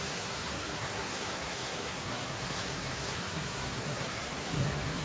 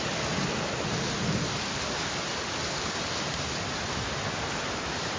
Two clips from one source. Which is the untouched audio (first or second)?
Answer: second